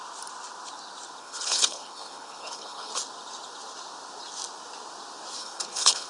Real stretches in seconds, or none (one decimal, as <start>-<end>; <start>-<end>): 0.0-1.2; 2.9-5.4